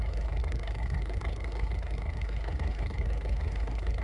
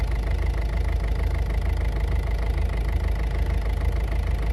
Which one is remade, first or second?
first